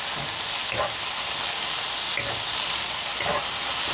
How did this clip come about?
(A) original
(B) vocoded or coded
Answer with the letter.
A